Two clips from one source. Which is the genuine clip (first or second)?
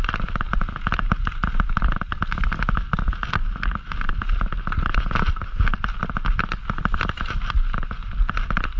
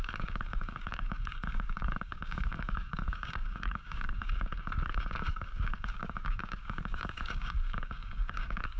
first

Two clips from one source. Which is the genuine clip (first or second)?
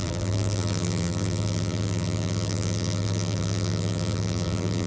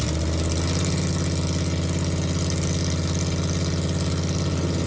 second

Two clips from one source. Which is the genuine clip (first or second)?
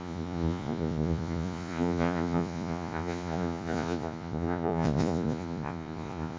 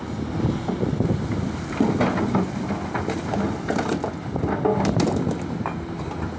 second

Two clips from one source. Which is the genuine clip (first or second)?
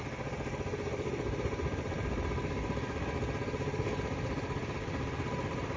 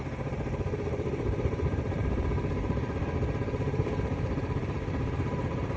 first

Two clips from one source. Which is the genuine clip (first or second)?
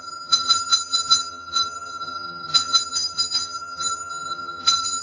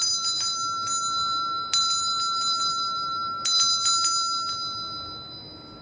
second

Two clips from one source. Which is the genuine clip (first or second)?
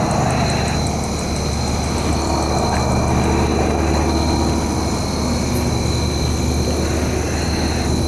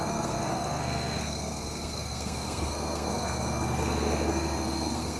first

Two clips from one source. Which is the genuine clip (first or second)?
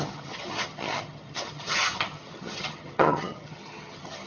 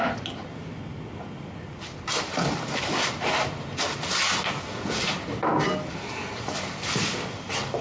second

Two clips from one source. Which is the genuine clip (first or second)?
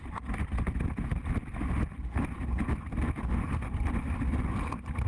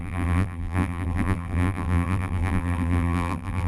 first